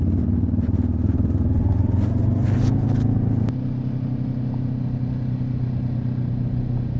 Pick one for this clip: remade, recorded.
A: recorded